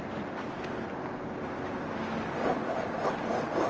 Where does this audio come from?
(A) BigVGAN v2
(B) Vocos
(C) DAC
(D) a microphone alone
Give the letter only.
D